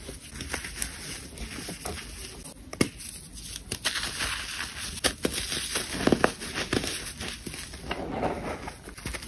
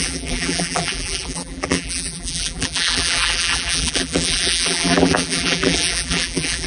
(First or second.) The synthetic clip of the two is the second